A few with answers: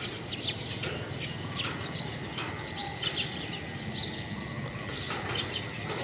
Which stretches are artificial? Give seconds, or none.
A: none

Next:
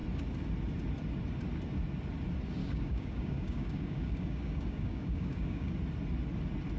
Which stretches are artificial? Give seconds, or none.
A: 2.6-5.7 (codec, DAC)

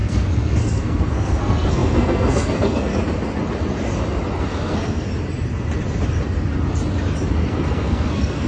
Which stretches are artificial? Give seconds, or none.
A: 0.0-2.9 (codec, SNAC); 4.4-5.1; 7.3-8.5

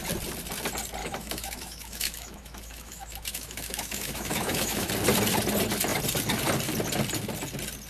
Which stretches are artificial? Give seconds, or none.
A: 1.0-4.9 (autoencoder, DAC-VAE)

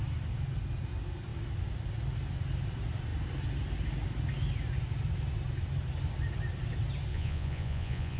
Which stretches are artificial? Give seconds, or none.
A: 7.1-8.2 (vocoder, Vocos)

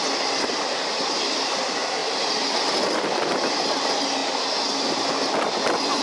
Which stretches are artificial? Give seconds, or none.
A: none

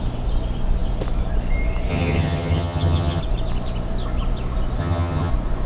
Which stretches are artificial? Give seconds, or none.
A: 1.9-3.2 (vocoder, HiFi-GAN); 4.8-5.3

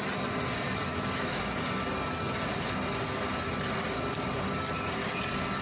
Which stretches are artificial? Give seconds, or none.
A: 0.9-1.4 (autoencoder, DAC-VAE)